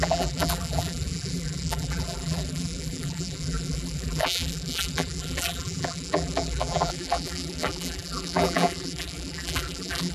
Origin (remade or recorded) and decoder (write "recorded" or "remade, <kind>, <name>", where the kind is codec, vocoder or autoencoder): remade, vocoder, BigVGAN v2